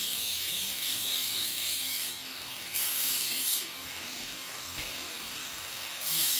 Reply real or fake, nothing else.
fake